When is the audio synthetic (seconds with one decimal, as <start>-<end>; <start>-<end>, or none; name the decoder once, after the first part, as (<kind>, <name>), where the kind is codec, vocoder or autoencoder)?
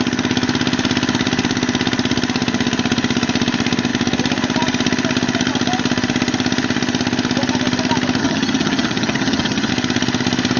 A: 8.2-9.7 (vocoder, HiFi-GAN)